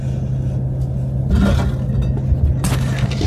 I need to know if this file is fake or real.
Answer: real